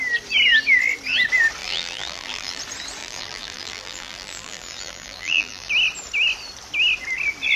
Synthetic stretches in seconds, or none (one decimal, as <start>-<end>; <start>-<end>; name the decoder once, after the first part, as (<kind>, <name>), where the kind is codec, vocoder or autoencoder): 1.6-2.6 (vocoder, BigVGAN v2); 3.0-5.7